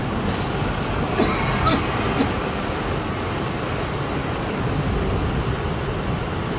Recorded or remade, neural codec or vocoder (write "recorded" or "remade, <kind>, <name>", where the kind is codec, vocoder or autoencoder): recorded